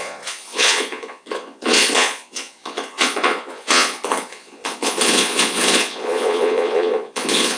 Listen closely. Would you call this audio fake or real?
fake